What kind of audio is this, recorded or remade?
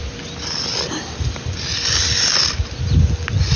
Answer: recorded